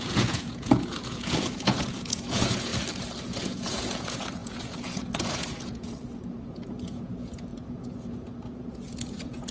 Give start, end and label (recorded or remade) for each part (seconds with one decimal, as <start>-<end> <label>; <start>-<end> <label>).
0.0-2.7 remade; 2.7-3.2 recorded; 3.2-9.5 remade